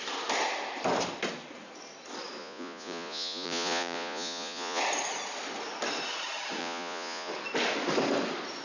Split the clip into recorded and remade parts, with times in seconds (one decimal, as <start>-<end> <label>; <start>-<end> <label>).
0.0-2.4 recorded; 2.4-4.8 remade; 4.8-6.6 recorded; 6.6-7.3 remade; 7.3-8.6 recorded